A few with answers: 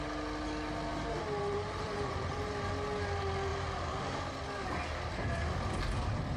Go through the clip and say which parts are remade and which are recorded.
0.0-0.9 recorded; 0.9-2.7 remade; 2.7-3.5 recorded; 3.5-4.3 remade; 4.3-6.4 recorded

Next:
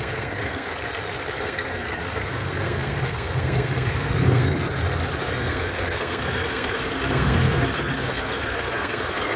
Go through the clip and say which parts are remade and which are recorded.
0.0-0.7 remade; 0.7-1.4 recorded; 1.4-4.7 remade; 4.7-5.2 recorded; 5.2-9.4 remade

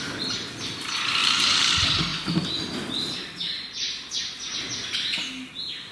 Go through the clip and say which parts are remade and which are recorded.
0.0-1.2 recorded; 1.2-1.7 remade; 1.7-5.9 recorded

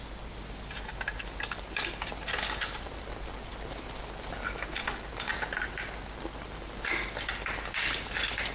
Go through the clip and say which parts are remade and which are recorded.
0.0-8.5 recorded

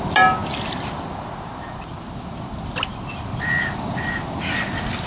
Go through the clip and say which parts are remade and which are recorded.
0.0-5.1 recorded